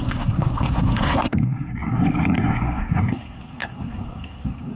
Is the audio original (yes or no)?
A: no